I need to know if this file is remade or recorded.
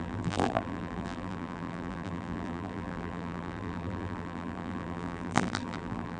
remade